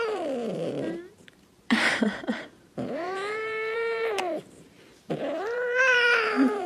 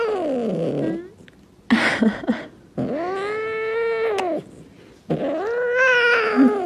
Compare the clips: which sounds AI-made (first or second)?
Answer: first